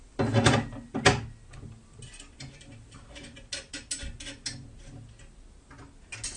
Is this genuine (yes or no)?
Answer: yes